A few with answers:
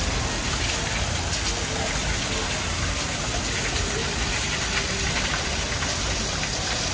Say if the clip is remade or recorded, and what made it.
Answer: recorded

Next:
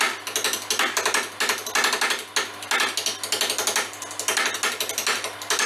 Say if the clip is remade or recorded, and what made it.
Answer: recorded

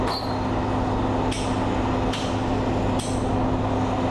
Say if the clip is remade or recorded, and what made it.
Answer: recorded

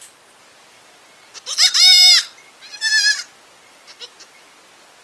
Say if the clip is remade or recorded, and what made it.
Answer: recorded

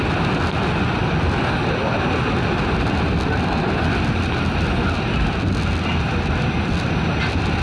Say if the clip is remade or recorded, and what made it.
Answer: recorded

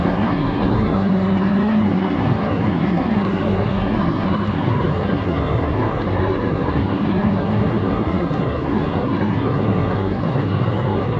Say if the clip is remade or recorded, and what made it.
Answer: remade, codec, SNAC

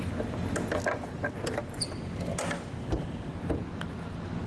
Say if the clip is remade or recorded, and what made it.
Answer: recorded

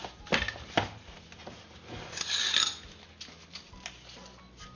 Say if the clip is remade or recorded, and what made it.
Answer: recorded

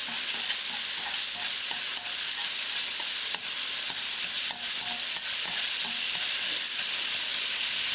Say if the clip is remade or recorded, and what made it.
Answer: recorded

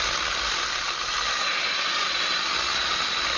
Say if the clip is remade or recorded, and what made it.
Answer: recorded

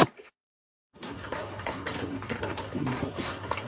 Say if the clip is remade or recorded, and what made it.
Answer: remade, codec, SNAC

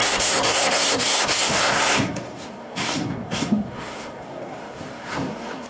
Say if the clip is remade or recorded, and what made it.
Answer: remade, codec, SNAC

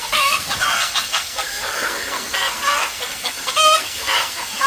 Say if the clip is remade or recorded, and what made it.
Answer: remade, codec, SNAC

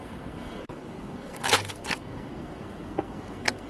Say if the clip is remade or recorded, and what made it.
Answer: remade, codec, SNAC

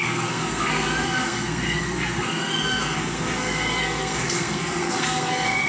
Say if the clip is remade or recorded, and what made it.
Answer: remade, codec, SNAC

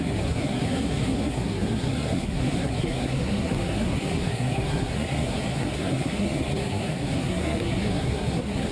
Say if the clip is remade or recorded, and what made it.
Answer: remade, codec, SNAC